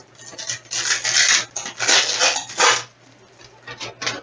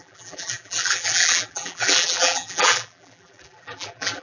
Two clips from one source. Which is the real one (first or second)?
first